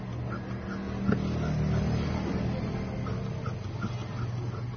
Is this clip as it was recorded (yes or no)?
yes